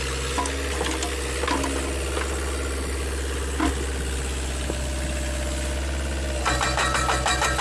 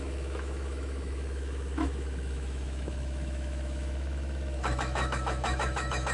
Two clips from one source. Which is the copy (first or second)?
second